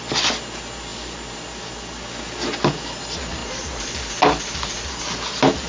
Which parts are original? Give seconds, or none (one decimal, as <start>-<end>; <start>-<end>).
0.0-5.7